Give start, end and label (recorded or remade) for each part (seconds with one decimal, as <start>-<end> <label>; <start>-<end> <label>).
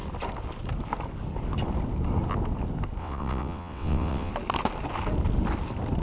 0.0-3.0 recorded; 3.0-4.3 remade; 4.3-6.0 recorded